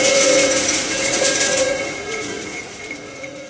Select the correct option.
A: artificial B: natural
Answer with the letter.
A